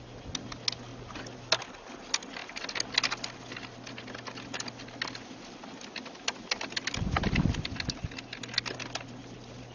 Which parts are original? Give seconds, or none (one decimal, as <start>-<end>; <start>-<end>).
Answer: 0.0-9.7